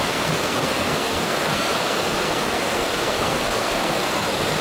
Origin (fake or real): fake